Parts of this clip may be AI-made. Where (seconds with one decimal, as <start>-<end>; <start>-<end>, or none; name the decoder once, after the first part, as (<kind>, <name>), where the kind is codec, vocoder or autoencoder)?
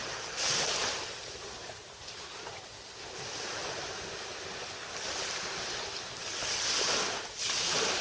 none